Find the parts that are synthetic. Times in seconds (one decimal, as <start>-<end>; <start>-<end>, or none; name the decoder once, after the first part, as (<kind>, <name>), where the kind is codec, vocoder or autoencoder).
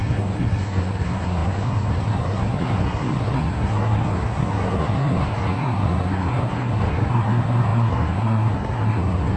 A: 0.0-9.4 (codec, SNAC)